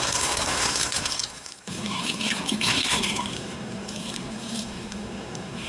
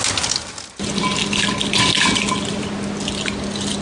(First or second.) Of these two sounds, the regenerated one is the first